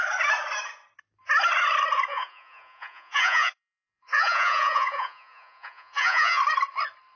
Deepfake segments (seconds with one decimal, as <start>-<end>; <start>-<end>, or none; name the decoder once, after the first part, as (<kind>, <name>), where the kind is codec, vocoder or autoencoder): 2.1-6.4 (vocoder, Vocos)